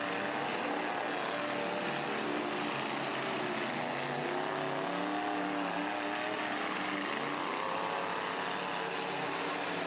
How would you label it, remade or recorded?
recorded